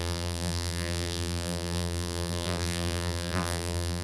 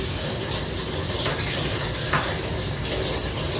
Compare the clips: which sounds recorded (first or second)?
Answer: second